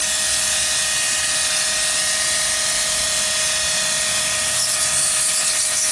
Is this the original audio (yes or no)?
yes